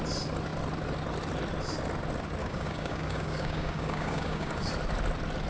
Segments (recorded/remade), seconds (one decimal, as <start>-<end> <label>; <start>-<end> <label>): 0.0-2.4 recorded; 2.4-4.7 remade; 4.7-5.5 recorded